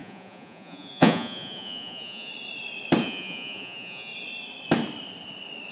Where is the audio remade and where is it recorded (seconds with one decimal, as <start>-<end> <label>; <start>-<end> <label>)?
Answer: 0.0-2.3 remade; 2.3-3.0 recorded; 3.0-4.1 remade; 4.1-5.7 recorded